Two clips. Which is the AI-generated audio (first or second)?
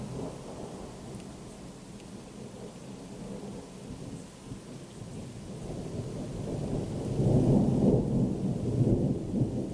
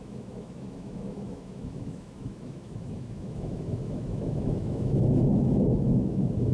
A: second